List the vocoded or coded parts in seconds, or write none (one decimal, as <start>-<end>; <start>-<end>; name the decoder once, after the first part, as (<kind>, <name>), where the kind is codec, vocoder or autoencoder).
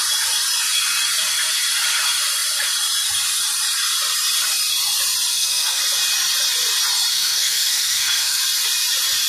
5.3-5.8 (codec, SNAC); 7.1-8.4